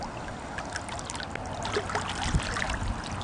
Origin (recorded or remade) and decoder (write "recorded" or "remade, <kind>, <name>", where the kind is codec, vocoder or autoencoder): recorded